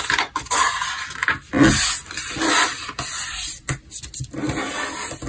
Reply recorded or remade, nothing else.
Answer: recorded